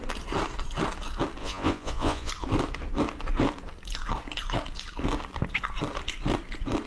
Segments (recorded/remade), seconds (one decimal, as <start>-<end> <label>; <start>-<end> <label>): 0.0-1.4 recorded; 1.4-2.3 remade; 2.3-6.9 recorded